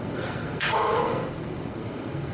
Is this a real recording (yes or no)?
no